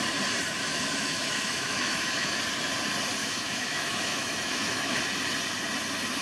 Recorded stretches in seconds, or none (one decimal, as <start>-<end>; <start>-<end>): 0.0-0.7; 2.4-3.2; 5.0-6.2